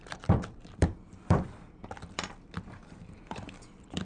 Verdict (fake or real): fake